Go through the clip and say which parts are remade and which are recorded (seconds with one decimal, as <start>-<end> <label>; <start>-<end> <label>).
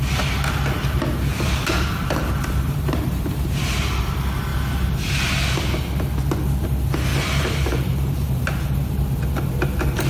0.0-1.3 recorded; 1.3-4.0 remade; 4.0-7.1 recorded; 7.1-8.6 remade; 8.6-10.1 recorded